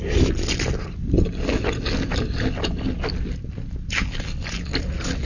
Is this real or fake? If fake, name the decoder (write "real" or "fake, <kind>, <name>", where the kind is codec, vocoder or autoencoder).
real